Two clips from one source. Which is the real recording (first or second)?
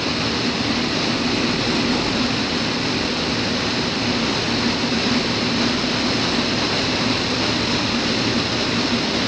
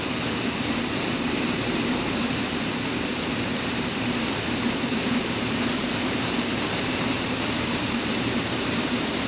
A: first